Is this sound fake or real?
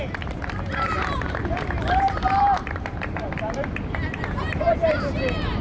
fake